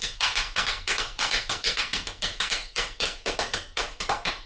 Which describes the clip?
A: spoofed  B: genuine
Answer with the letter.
A